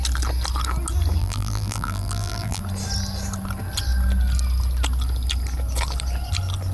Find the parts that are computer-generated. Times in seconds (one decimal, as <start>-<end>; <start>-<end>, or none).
1.2-2.6